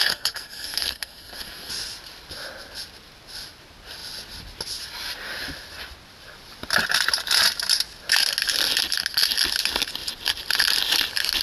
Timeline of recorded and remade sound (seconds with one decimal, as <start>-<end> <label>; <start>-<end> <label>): 0.0-1.7 remade; 1.7-11.4 recorded